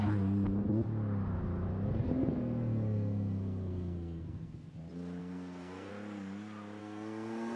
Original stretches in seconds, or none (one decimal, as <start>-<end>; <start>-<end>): 0.0-2.2; 4.7-5.2; 5.9-6.8